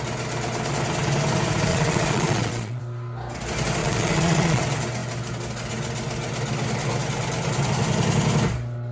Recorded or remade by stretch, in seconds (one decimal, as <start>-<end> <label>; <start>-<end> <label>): 0.0-1.7 recorded; 1.7-2.8 remade; 2.8-3.8 recorded; 3.8-4.6 remade; 4.6-8.9 recorded